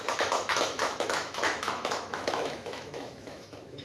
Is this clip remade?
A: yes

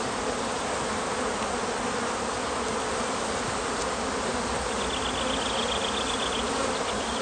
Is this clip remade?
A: no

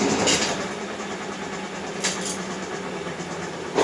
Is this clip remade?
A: yes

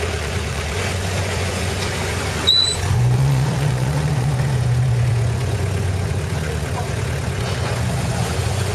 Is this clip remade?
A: yes